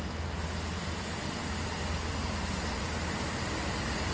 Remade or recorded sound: recorded